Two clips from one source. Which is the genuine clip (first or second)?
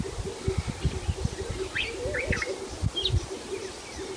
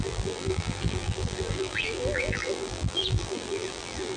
first